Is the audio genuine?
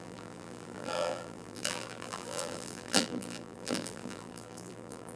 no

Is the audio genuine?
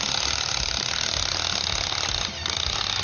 yes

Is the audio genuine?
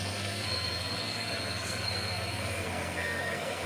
no